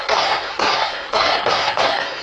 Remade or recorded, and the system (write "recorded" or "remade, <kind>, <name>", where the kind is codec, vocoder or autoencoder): remade, codec, SNAC